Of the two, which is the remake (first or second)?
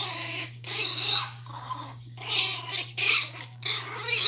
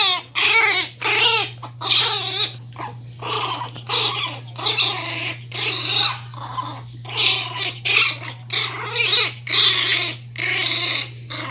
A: first